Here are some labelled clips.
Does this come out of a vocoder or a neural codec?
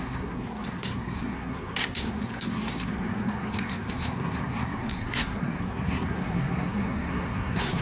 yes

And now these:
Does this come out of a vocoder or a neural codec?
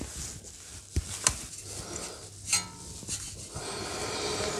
no